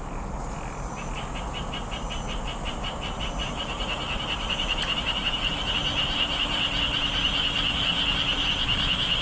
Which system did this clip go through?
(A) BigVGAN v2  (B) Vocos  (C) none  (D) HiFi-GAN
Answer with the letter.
C